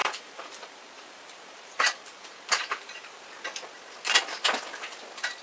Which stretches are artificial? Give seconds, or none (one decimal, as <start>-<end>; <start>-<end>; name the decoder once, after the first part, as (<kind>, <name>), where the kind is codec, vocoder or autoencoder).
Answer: 0.0-3.2 (vocoder, BigVGAN v2)